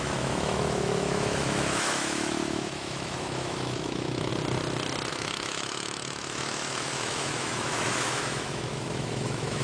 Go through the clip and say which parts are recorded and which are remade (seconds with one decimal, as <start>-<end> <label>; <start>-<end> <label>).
0.0-4.3 remade; 4.3-5.1 recorded; 5.1-9.6 remade